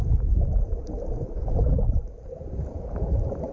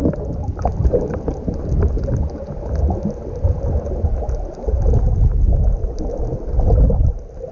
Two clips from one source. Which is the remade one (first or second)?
first